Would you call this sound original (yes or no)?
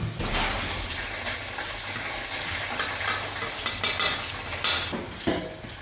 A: yes